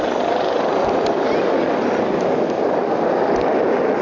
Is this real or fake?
real